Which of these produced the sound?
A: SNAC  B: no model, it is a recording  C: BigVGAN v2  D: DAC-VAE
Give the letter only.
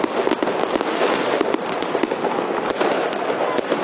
B